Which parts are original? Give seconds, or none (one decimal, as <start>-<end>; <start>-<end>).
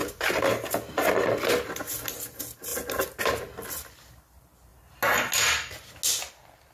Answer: 0.0-6.7